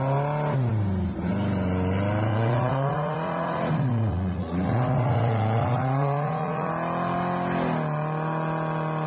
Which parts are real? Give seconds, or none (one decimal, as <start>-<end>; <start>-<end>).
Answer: 0.0-2.3; 6.7-9.1